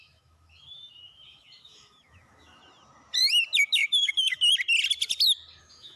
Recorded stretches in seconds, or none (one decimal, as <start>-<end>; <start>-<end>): 2.6-3.6; 4.5-5.6